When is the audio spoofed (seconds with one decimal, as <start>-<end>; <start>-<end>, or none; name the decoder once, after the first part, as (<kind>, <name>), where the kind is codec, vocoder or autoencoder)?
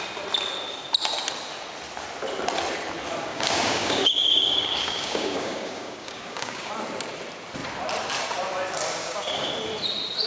3.3-6.7 (codec, DAC); 9.0-9.5